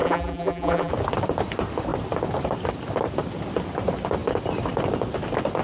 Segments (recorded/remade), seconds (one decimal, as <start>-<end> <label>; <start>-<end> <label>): 0.0-0.9 remade; 0.9-5.6 recorded